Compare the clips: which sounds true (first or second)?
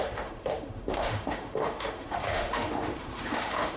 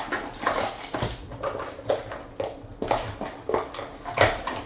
second